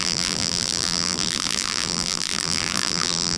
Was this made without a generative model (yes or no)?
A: no